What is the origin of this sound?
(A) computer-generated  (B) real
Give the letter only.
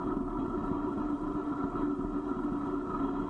B